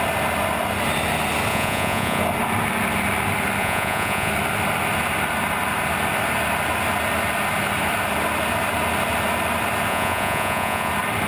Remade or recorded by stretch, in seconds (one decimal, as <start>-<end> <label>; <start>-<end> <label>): 0.0-1.5 recorded; 1.5-2.2 remade; 2.2-3.6 recorded; 3.6-4.3 remade; 4.3-9.9 recorded; 9.9-10.9 remade; 10.9-11.3 recorded